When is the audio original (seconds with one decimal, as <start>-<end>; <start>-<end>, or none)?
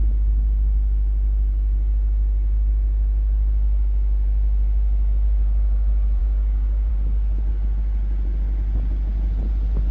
0.0-6.2; 6.9-9.9